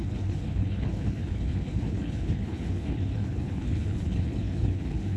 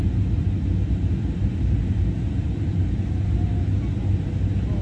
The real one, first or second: second